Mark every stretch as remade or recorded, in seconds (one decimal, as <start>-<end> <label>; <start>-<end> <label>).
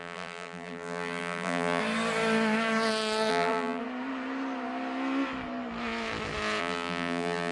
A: 0.0-1.8 remade; 1.8-3.3 recorded; 3.3-3.8 remade; 3.8-6.6 recorded; 6.6-7.5 remade